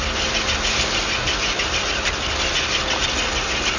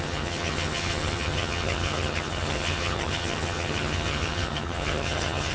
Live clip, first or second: first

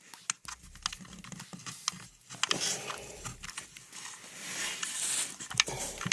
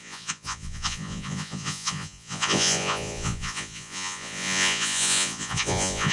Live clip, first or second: first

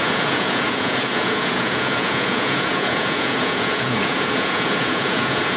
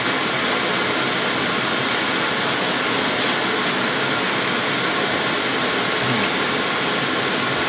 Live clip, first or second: second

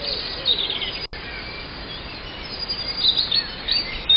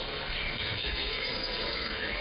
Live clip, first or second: first